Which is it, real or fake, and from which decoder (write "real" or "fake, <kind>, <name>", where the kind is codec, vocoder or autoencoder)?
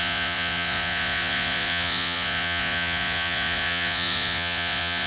fake, vocoder, Vocos